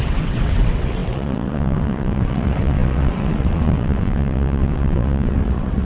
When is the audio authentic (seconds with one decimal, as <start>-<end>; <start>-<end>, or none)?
none